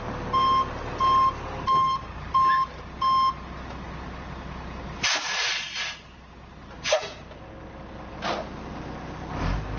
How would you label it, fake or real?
real